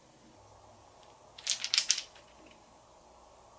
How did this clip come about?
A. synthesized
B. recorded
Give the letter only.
B